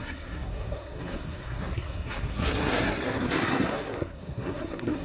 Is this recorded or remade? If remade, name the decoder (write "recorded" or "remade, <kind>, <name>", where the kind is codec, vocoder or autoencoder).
remade, codec, SNAC